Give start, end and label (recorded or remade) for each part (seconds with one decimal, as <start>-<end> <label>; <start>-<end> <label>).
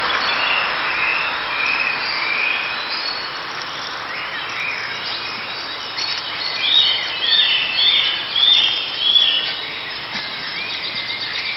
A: 0.0-1.1 recorded; 1.1-2.3 remade; 2.3-7.3 recorded; 7.3-7.9 remade; 7.9-11.6 recorded